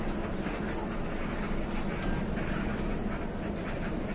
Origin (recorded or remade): recorded